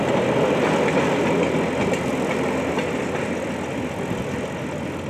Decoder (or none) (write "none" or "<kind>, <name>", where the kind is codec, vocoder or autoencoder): none